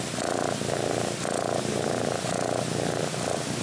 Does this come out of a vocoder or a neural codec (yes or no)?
no